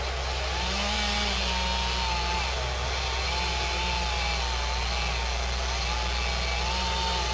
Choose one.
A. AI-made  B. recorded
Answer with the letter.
B